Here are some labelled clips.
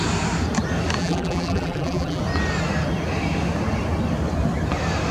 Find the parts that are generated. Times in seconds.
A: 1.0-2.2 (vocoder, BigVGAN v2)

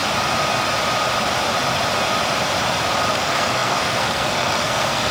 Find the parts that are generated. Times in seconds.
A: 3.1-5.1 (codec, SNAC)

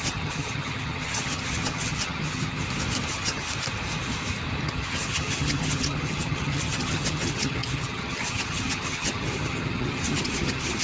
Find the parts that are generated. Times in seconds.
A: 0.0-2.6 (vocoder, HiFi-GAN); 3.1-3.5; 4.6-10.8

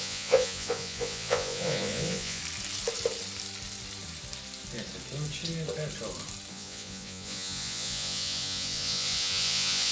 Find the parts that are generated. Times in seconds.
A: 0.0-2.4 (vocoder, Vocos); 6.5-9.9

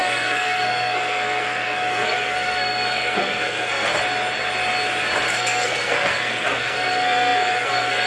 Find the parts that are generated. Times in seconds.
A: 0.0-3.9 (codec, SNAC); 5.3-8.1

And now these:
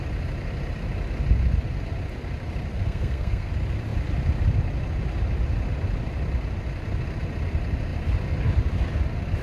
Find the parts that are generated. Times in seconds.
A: 2.7-3.5 (codec, SNAC)

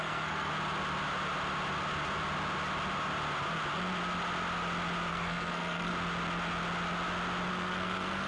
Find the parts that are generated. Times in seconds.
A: 0.0-0.5 (codec, SNAC); 5.1-5.9; 7.5-8.3